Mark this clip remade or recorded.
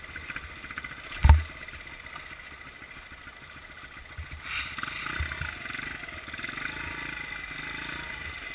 recorded